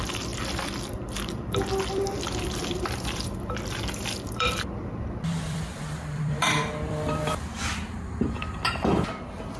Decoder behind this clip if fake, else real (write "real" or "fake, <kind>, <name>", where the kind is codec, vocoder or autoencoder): fake, vocoder, BigVGAN v2